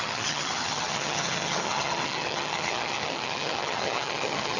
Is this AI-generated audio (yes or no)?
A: yes